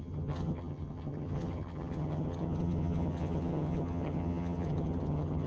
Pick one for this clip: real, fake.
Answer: fake